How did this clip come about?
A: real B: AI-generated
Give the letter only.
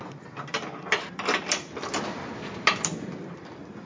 A